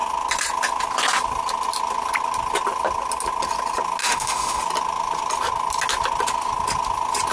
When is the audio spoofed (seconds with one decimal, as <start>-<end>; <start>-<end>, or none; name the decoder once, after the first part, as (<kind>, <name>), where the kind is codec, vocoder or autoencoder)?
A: 4.0-4.6 (autoencoder, DAC-VAE)